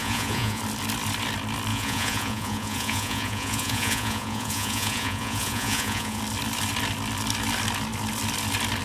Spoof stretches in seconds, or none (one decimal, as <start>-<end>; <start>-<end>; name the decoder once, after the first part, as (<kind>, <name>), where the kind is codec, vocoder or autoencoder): 0.0-0.6 (vocoder, Vocos); 1.7-6.2